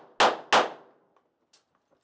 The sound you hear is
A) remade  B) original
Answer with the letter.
B